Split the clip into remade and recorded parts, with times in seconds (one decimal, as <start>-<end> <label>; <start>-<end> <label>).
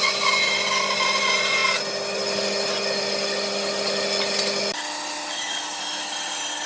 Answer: 0.0-6.7 recorded